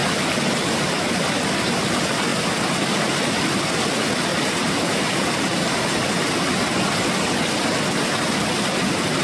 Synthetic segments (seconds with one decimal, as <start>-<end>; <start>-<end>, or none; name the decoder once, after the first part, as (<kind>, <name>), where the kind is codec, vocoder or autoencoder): 4.3-6.2 (vocoder, BigVGAN v2)